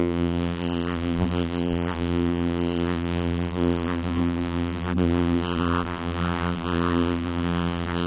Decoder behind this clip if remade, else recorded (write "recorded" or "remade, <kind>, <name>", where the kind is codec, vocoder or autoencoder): remade, vocoder, BigVGAN v2